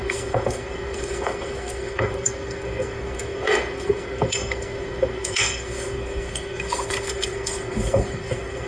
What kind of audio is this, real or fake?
fake